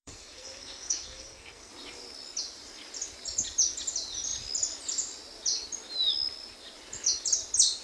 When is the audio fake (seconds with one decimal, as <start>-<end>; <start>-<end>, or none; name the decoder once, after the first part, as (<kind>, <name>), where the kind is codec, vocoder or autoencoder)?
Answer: 0.0-1.7 (codec, SNAC)